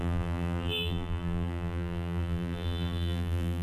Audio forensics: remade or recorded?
remade